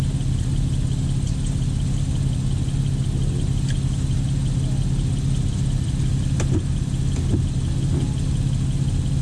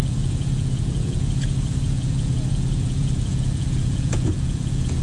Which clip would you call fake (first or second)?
second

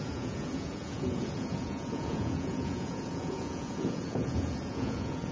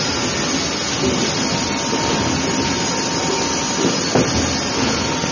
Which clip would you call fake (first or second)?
first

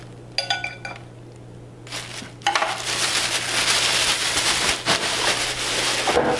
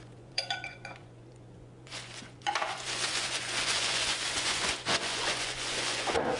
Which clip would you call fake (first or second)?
second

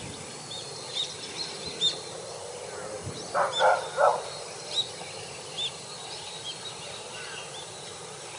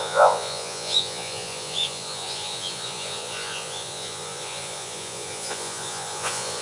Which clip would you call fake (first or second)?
second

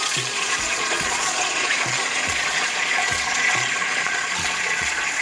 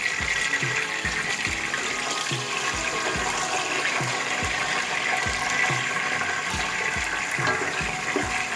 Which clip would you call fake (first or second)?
first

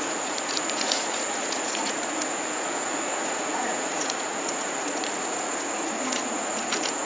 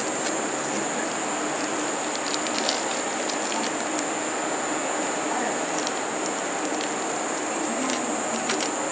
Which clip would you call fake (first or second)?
first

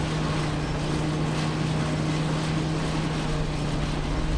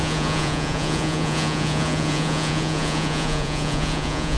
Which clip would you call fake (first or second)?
second